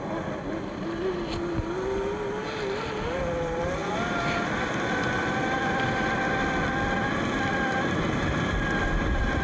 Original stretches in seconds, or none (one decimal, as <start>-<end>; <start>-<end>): 0.0-9.4